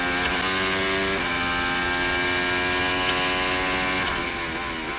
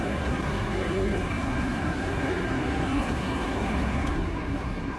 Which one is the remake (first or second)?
second